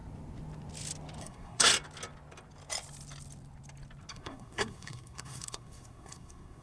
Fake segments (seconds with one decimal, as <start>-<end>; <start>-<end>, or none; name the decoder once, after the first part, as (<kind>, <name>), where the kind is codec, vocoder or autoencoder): 1.2-1.7 (codec, SNAC); 4.1-6.6